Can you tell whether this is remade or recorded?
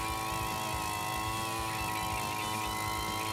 recorded